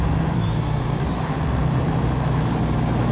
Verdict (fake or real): real